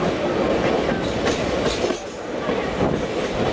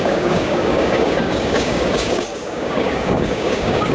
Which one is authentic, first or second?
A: first